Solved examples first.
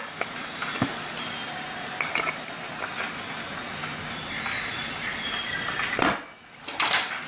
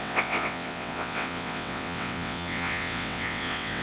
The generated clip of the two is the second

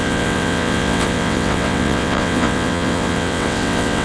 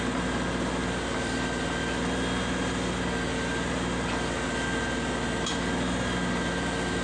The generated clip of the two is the first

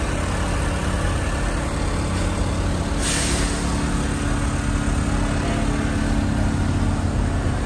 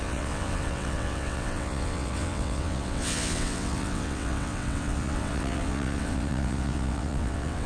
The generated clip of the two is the second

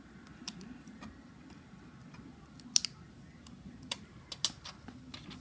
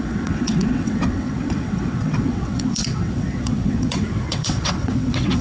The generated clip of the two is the second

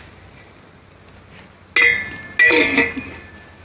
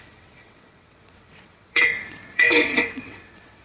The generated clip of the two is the second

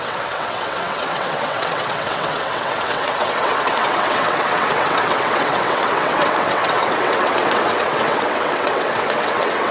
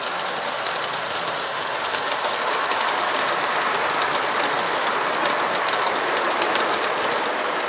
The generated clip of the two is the first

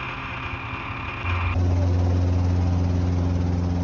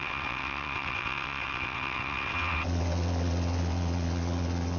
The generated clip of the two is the second